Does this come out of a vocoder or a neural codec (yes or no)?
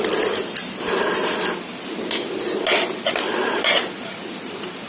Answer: no